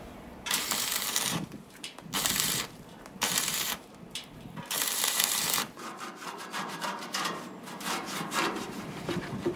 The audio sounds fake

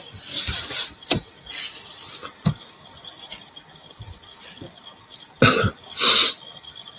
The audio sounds real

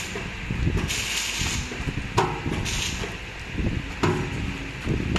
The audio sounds real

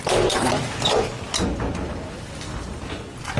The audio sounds fake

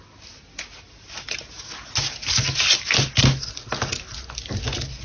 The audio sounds real